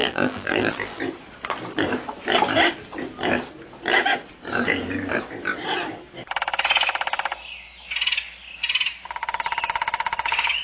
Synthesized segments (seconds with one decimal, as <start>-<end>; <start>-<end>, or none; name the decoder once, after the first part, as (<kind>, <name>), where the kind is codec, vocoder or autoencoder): 0.0-1.0 (vocoder, BigVGAN v2)